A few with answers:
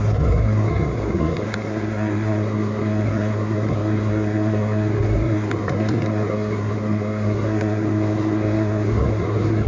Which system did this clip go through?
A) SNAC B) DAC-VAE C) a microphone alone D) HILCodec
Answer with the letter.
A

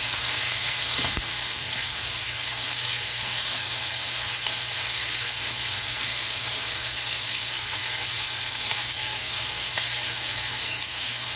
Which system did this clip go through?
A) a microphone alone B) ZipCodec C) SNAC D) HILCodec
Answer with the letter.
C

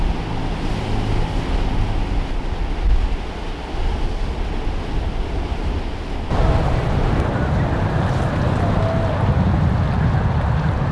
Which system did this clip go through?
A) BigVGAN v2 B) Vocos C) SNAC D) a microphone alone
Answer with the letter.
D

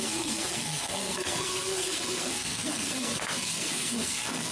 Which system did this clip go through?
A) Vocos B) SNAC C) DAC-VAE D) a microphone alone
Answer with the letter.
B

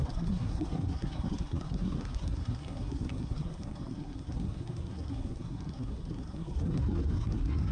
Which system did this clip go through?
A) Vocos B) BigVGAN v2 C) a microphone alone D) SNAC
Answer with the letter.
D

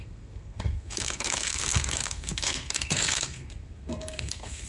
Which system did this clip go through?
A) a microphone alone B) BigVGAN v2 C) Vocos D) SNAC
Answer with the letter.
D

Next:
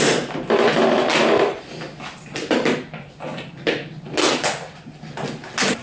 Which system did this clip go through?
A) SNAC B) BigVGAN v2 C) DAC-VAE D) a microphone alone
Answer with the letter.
D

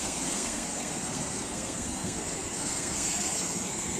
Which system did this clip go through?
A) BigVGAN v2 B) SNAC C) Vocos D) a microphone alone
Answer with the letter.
B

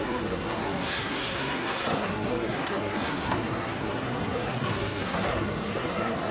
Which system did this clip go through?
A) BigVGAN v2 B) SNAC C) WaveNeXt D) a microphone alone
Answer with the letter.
B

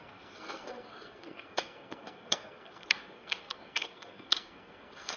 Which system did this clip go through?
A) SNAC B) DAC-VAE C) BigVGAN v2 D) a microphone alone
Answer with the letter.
A